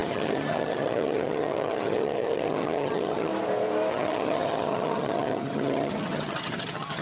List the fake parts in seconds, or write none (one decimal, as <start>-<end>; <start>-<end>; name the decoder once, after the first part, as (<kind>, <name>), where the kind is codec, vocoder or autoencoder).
0.0-3.3 (vocoder, HiFi-GAN); 3.9-7.0